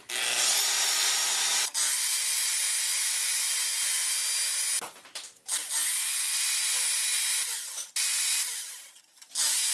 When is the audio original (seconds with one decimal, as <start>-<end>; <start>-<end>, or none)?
0.0-9.7

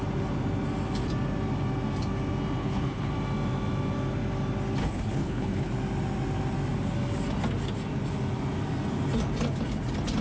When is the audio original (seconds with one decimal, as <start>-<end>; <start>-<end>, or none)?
0.0-2.6; 3.1-4.8; 5.7-10.2

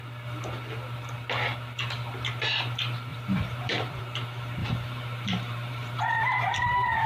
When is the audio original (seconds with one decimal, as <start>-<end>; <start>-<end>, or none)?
0.0-3.1; 4.0-4.6

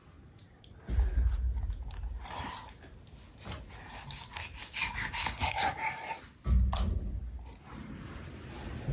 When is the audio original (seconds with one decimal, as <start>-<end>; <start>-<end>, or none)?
0.0-4.6; 5.6-8.9